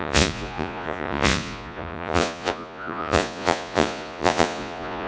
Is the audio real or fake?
fake